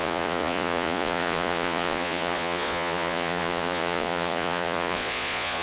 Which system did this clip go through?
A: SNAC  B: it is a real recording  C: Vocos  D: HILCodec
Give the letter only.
C